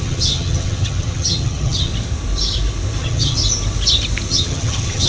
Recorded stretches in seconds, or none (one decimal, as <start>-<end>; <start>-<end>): 1.9-3.0; 3.4-4.3

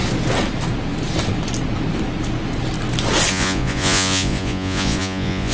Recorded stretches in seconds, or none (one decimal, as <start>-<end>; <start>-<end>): 0.0-3.3